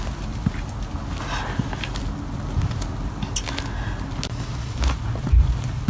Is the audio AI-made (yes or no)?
no